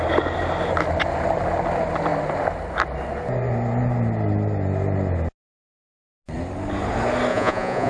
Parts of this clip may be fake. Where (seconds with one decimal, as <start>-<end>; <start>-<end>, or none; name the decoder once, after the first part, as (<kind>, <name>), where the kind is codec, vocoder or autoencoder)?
7.3-7.9 (vocoder, Vocos)